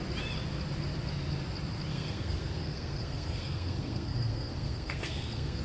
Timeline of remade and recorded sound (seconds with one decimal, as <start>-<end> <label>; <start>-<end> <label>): 0.0-1.9 recorded; 1.9-5.6 remade